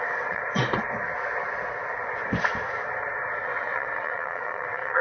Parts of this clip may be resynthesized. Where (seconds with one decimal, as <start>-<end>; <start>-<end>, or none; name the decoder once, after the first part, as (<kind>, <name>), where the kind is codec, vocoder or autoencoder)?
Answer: 0.0-0.4 (vocoder, WaveNeXt); 3.4-5.0

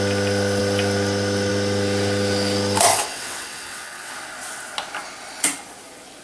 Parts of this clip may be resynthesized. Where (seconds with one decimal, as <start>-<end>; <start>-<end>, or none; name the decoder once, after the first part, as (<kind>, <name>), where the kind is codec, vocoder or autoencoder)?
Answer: 2.9-4.1 (vocoder, WaveNeXt)

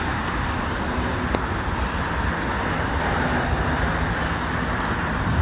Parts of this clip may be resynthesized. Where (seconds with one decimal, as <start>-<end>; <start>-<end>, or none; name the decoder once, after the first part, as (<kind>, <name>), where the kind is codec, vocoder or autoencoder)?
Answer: none

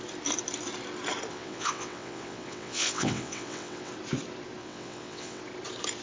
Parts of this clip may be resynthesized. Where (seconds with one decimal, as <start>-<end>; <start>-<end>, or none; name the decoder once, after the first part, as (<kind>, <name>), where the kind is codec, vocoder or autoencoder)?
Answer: 1.3-3.9 (vocoder, WaveNeXt); 4.6-5.4

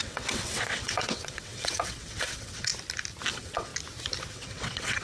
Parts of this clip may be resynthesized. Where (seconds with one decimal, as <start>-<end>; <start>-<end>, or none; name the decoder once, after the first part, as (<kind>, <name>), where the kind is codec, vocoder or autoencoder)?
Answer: 0.0-2.7 (vocoder, WaveNeXt); 3.3-3.7; 4.3-5.0

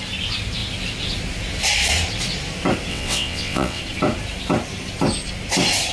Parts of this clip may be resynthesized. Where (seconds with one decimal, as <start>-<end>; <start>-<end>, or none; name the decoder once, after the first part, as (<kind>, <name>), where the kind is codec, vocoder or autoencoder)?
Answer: 2.9-3.8 (vocoder, WaveNeXt)

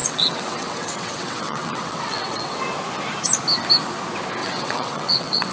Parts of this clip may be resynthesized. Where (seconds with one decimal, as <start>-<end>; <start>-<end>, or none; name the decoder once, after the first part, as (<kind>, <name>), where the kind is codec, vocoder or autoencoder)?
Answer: 0.0-2.6 (vocoder, WaveNeXt); 4.4-5.5

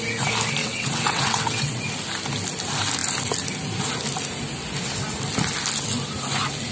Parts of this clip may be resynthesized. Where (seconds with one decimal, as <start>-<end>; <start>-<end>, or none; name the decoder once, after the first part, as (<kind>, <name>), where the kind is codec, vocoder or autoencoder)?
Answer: 0.6-1.8 (vocoder, WaveNeXt)